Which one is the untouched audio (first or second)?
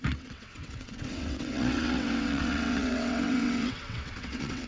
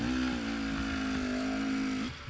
second